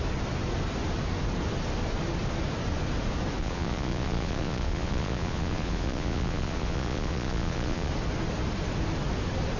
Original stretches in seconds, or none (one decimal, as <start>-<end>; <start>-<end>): 0.0-3.4; 7.9-9.6